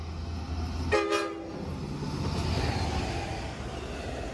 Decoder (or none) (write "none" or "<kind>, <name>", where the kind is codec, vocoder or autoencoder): none